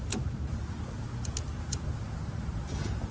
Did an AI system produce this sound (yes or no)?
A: no